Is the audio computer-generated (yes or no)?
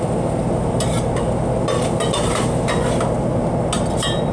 no